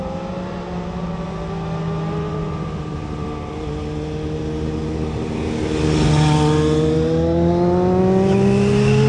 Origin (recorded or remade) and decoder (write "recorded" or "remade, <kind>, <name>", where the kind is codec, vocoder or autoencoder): recorded